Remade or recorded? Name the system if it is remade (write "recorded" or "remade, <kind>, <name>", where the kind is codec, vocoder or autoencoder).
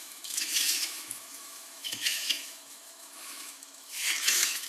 remade, autoencoder, DAC-VAE